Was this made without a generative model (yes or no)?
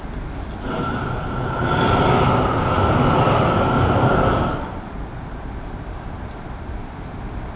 no